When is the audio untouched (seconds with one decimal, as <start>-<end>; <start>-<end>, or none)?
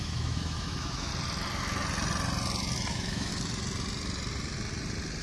1.1-2.9; 3.3-5.2